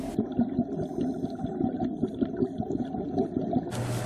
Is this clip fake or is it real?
real